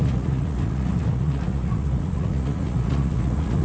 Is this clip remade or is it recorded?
remade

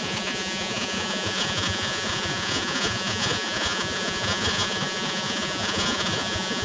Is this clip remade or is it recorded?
remade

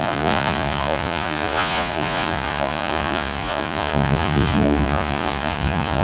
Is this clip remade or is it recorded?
remade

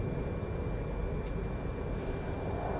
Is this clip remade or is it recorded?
recorded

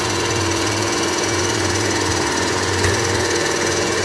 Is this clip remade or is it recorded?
remade